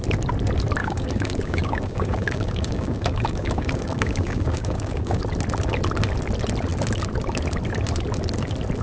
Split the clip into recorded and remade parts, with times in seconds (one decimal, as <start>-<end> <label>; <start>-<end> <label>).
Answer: 0.0-0.8 recorded; 0.8-5.2 remade; 5.2-8.8 recorded